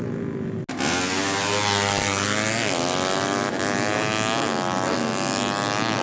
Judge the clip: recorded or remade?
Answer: recorded